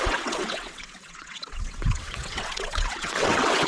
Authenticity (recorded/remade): remade